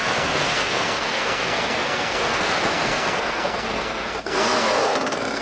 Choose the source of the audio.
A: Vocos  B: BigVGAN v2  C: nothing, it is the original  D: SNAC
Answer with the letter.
D